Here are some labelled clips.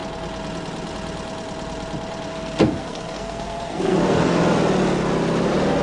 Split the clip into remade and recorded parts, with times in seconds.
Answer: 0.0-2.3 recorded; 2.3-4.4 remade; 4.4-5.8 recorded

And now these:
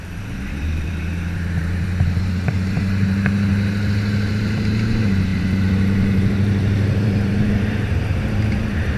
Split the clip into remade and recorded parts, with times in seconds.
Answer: 0.0-3.5 remade; 3.5-4.3 recorded; 4.3-9.0 remade

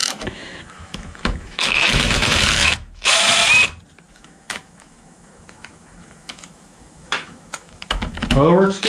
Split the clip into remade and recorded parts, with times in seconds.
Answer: 0.0-3.4 remade; 3.4-4.1 recorded; 4.1-8.9 remade

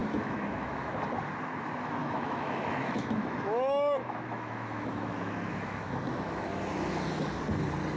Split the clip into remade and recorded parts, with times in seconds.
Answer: 0.0-0.9 remade; 0.9-2.0 recorded; 2.0-6.5 remade; 6.5-8.0 recorded

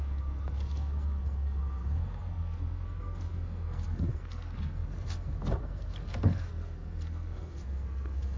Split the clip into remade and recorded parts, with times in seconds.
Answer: 0.0-8.4 remade

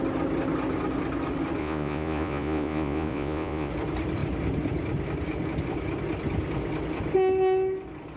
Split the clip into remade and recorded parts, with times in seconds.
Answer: 0.0-1.6 recorded; 1.6-3.7 remade; 3.7-8.2 recorded

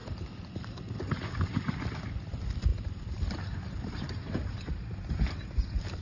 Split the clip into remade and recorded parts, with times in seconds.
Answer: 0.0-0.8 remade; 0.8-2.7 recorded; 2.7-5.3 remade; 5.3-6.0 recorded

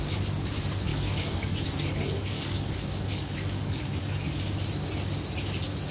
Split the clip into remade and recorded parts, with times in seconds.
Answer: 0.0-0.9 recorded; 0.9-4.4 remade; 4.4-5.9 recorded